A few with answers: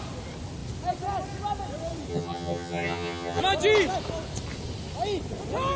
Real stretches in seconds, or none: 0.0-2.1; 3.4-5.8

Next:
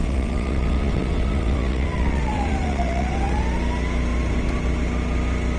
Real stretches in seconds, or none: 3.4-5.6

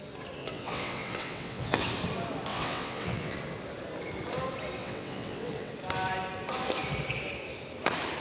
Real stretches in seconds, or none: 0.0-0.4; 1.9-2.5; 3.4-4.8; 5.7-8.2

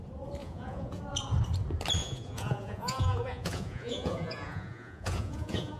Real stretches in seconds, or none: 0.0-0.4; 1.0-2.0